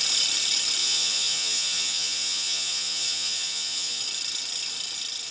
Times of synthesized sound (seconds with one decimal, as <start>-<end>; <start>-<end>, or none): 0.8-4.0